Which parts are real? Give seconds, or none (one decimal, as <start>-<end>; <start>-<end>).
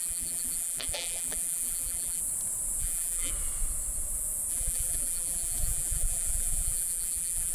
2.2-2.8; 3.3-4.5